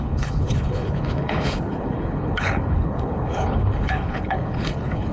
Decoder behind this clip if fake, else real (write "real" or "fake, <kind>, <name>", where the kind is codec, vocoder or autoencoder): fake, codec, HILCodec